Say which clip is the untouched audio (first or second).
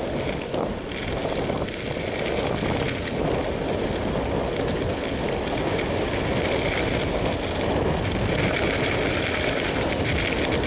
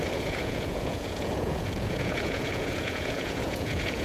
first